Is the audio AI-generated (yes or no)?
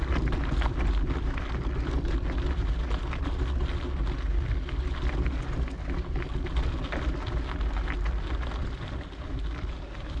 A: no